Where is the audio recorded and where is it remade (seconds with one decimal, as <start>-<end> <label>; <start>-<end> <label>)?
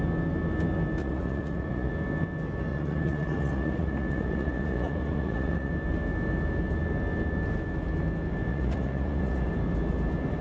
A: 0.0-1.0 recorded; 1.0-1.9 remade; 1.9-2.7 recorded; 2.7-5.7 remade; 5.7-8.5 recorded; 8.5-9.5 remade; 9.5-10.4 recorded